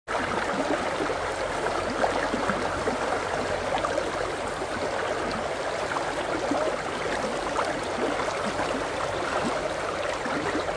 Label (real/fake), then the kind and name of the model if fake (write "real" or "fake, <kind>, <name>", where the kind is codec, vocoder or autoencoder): real